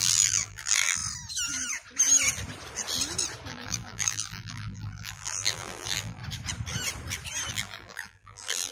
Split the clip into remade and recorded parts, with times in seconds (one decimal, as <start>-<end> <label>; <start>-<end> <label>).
0.0-1.0 remade; 1.0-3.5 recorded; 3.5-6.2 remade; 6.2-7.5 recorded; 7.5-8.7 remade